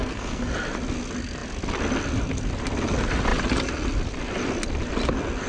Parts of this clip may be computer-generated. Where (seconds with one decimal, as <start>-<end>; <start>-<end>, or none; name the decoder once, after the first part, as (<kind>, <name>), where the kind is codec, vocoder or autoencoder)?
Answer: 0.0-0.5 (codec, SNAC)